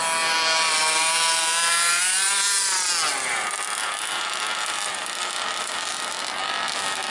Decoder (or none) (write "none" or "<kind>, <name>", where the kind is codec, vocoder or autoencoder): none